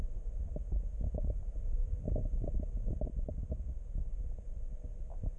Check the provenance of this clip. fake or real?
real